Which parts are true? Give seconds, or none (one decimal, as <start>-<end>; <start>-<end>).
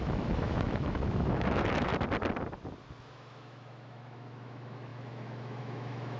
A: 1.9-3.0